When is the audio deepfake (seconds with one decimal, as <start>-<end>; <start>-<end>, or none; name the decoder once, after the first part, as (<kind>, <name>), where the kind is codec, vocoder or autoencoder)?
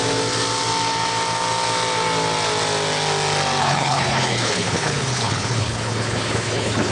3.6-6.9 (codec, HILCodec)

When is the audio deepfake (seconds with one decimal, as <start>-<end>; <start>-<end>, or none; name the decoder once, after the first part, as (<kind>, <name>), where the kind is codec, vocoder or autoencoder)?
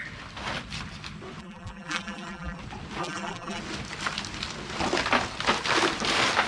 1.4-2.6 (vocoder, BigVGAN v2); 3.0-3.6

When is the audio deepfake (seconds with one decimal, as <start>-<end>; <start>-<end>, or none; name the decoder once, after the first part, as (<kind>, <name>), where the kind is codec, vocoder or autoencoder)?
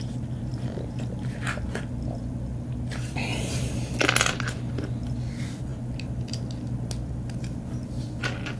none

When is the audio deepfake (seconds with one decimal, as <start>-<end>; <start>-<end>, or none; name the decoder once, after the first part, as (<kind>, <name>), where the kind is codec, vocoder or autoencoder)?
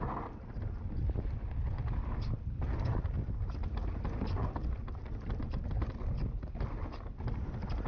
none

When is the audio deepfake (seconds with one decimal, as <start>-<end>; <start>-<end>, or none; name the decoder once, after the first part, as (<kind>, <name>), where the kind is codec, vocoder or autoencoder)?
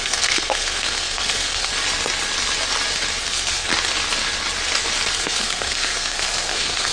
0.0-1.7 (codec, SNAC); 3.2-3.7; 5.1-6.9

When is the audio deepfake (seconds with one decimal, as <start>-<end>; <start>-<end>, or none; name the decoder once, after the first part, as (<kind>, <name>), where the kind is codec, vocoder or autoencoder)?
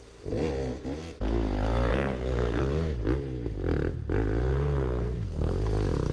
1.9-2.6 (codec, SNAC); 4.5-5.5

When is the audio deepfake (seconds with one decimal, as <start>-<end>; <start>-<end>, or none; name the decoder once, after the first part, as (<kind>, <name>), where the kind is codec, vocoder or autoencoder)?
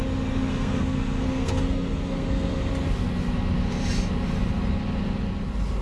0.5-2.7 (codec, SNAC)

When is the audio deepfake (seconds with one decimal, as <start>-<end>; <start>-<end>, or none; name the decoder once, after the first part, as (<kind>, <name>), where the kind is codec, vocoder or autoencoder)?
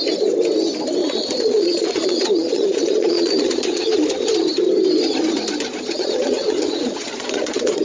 1.0-4.0 (vocoder, Vocos); 5.9-7.8